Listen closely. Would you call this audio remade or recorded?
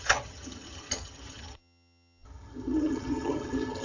remade